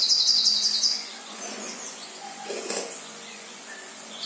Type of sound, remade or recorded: remade